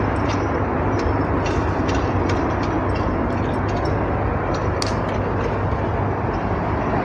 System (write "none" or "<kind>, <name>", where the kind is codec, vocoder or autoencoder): none